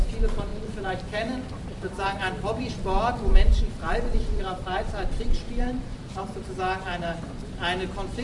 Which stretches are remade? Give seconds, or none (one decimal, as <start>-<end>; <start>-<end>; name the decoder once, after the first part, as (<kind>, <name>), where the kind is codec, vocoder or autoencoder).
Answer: 0.5-2.7 (vocoder, BigVGAN v2); 3.5-7.5